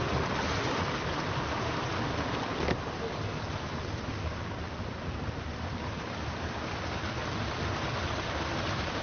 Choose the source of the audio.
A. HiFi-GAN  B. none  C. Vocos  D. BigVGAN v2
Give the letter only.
B